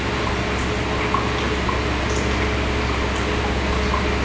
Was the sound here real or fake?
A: real